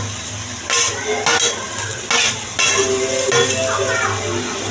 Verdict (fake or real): real